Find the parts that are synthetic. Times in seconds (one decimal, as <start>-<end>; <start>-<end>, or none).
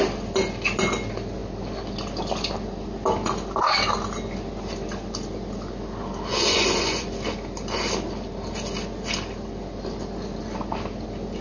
6.3-7.1